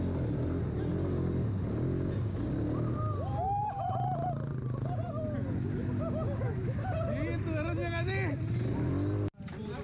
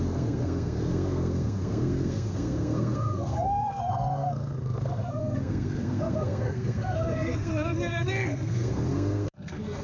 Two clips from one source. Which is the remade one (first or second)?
second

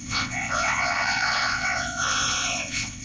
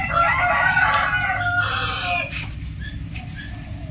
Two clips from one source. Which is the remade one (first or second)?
first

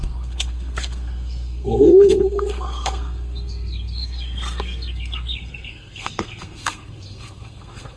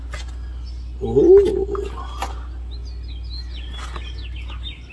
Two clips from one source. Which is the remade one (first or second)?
first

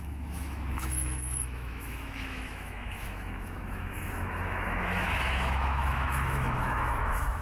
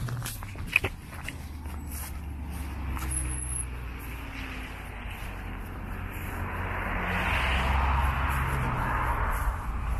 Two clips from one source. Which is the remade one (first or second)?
first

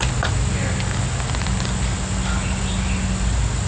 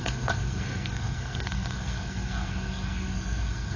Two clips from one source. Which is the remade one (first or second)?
second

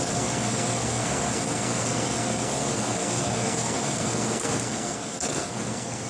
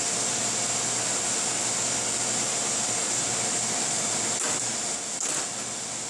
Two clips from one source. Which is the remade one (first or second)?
first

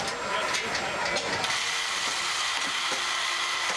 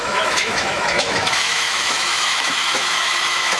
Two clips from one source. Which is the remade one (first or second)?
second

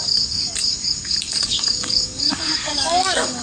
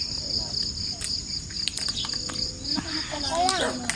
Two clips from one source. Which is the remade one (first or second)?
first